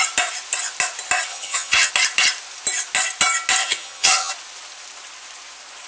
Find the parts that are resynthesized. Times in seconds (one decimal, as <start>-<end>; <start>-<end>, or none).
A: 1.3-1.9; 3.6-4.3